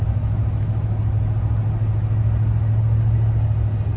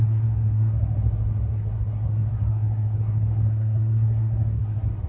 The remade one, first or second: second